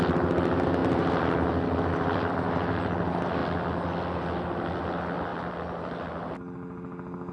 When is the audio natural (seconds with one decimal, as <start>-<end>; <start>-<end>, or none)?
0.0-7.3